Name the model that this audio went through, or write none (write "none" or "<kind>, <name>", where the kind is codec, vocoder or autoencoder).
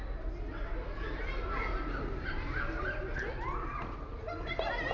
none